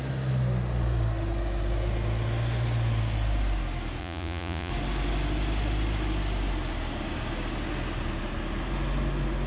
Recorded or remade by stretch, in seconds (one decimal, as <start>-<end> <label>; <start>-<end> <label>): 0.0-4.0 recorded; 4.0-4.7 remade; 4.7-9.5 recorded